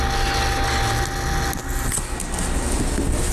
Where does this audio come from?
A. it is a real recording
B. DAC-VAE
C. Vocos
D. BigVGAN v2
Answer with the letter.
A